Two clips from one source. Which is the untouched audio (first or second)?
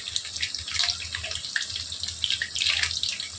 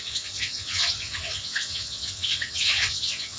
first